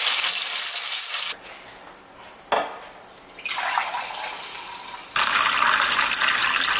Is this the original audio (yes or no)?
yes